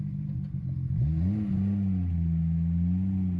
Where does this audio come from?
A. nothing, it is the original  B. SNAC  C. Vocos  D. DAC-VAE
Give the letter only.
A